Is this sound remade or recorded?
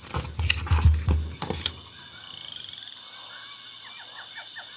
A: recorded